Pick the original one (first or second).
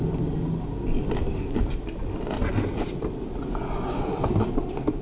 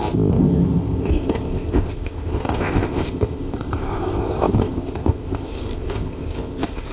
first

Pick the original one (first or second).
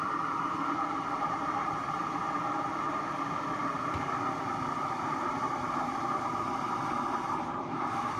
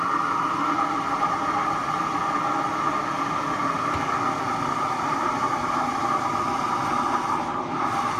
second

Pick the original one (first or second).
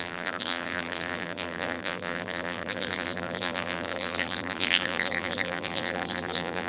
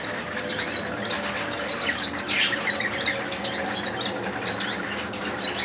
second